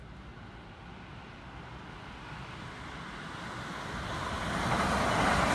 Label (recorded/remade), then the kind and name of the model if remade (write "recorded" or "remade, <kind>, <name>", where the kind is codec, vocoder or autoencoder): recorded